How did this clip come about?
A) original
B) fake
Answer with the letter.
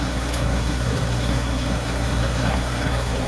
B